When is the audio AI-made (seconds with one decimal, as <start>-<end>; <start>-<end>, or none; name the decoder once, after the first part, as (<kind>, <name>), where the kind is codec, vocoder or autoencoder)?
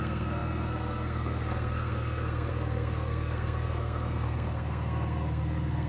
0.0-5.9 (codec, SNAC)